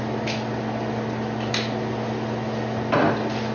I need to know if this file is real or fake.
real